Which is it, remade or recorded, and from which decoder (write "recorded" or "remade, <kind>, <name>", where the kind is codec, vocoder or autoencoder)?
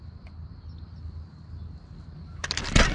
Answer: recorded